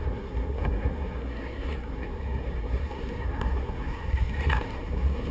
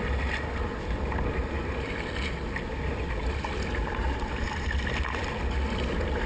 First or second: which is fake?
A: first